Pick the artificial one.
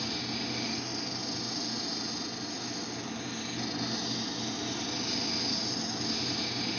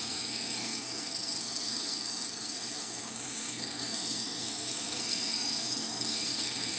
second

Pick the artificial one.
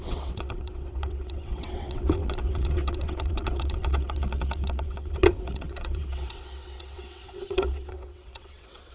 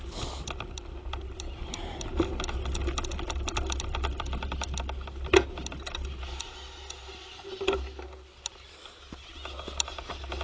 first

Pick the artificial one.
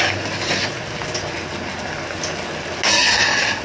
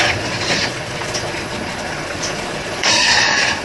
second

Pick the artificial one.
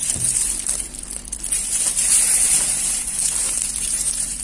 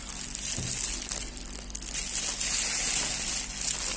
first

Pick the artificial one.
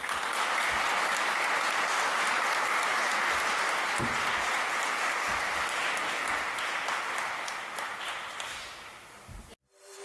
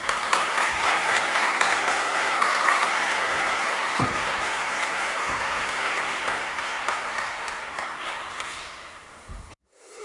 second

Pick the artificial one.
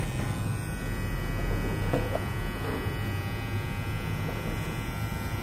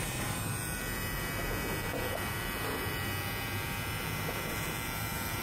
second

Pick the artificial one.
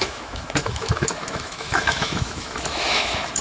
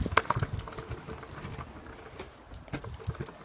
first